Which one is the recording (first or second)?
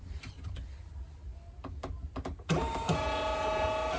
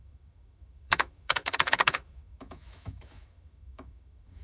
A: first